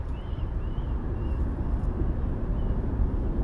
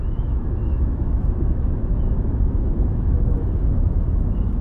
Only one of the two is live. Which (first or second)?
first